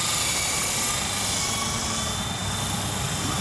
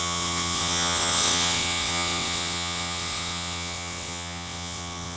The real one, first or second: first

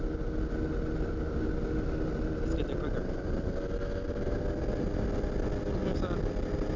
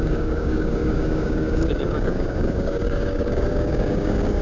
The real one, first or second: first